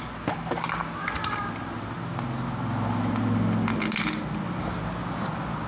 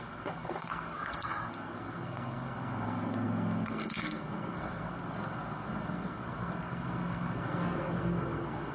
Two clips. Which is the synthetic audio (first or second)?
second